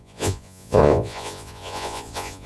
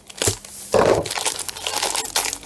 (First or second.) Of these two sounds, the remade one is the first